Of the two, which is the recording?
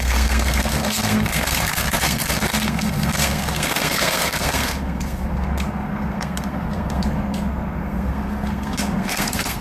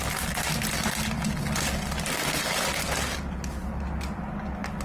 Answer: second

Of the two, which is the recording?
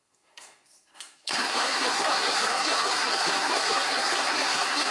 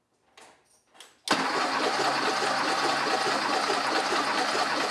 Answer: second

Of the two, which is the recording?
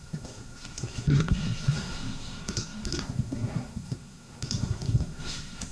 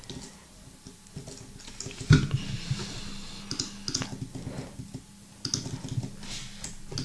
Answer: second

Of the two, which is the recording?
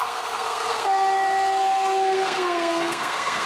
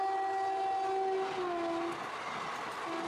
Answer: second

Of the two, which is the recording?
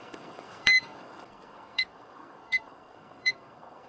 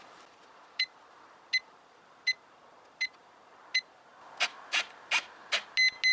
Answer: second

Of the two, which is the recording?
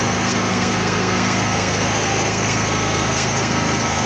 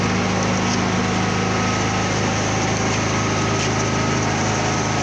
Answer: second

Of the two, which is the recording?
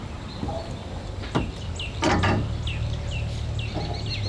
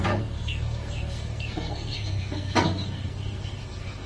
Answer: first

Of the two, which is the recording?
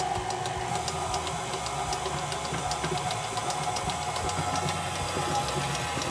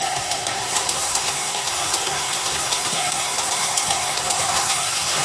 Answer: first